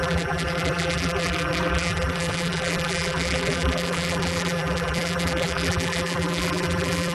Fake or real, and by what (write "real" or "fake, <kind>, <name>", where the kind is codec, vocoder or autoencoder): fake, vocoder, BigVGAN v2